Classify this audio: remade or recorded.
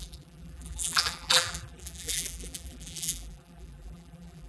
remade